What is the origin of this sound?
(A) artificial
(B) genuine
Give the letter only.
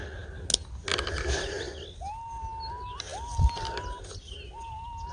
B